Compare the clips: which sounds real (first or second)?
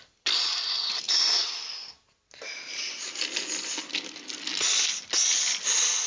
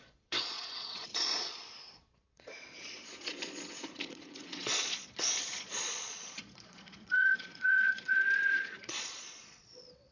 first